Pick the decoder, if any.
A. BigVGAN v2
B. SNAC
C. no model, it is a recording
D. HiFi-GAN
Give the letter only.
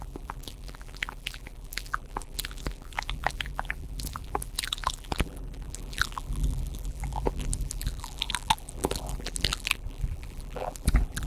A